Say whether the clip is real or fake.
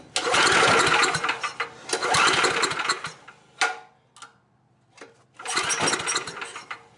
real